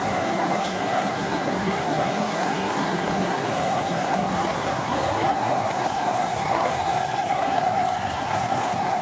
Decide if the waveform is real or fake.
fake